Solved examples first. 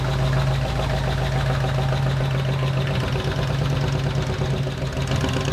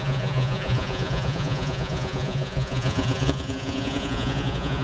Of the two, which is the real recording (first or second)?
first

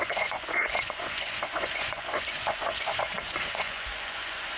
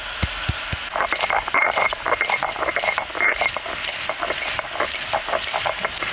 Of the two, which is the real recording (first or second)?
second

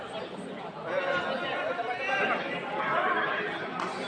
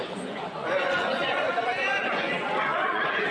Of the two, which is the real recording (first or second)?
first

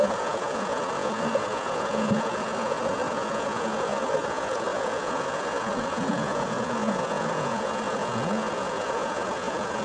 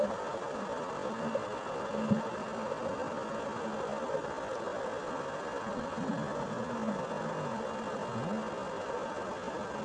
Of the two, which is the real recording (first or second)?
second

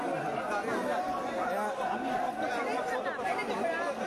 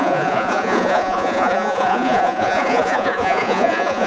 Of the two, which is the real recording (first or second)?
first